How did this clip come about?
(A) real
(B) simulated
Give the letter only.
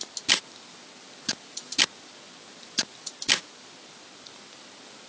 A